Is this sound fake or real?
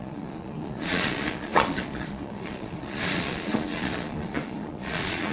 fake